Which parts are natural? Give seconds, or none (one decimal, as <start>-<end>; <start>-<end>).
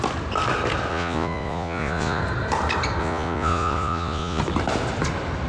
0.0-0.9; 2.2-3.0; 4.4-5.5